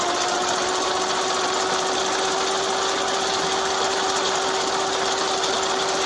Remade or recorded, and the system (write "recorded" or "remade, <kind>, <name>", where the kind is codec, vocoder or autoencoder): recorded